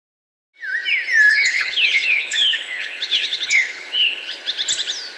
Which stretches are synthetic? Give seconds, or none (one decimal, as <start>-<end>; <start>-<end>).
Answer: 1.3-4.4